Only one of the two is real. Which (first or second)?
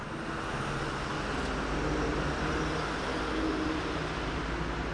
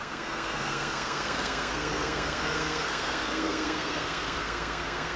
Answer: first